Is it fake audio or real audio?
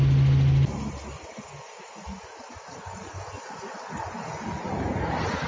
real